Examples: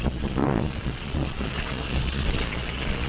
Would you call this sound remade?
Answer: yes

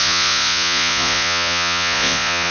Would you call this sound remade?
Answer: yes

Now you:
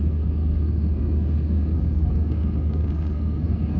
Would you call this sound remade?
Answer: yes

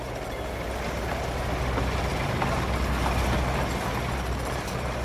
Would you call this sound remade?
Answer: no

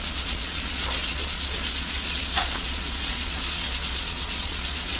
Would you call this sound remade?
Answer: yes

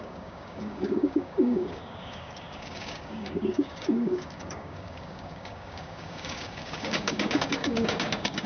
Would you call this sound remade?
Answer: yes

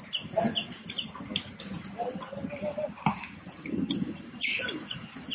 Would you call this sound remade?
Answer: no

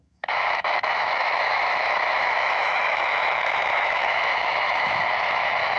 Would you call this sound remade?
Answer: yes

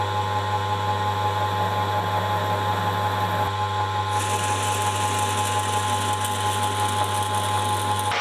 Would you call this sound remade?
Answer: no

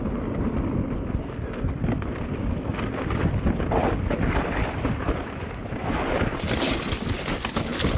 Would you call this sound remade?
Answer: no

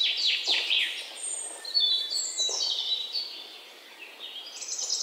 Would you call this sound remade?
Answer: yes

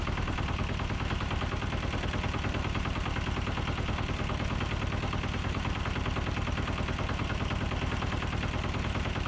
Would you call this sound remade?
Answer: no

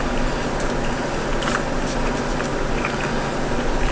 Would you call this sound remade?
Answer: no